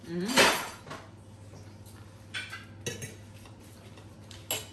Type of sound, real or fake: real